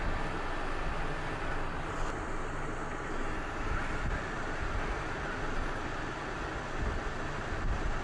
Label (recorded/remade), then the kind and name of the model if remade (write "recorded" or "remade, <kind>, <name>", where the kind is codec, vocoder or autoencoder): recorded